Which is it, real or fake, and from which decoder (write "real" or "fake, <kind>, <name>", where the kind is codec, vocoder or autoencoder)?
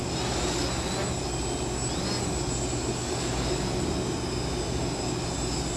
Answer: real